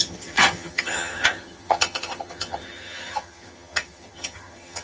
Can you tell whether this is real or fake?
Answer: fake